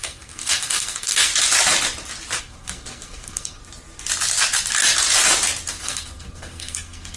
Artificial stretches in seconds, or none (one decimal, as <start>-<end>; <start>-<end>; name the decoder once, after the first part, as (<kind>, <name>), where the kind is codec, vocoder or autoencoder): 0.0-1.3 (codec, SNAC); 2.4-3.6; 5.7-7.2